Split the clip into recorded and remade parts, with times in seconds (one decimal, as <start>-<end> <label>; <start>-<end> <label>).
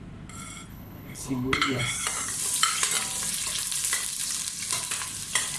0.0-0.7 recorded; 0.7-1.8 remade; 1.8-5.6 recorded